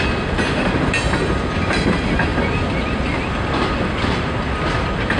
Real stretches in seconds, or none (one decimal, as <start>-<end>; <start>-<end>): 0.0-5.2